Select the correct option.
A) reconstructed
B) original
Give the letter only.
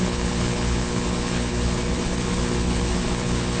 A